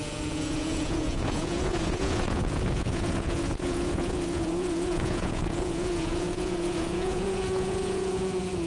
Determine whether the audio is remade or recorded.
remade